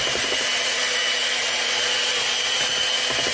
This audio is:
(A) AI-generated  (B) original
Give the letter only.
B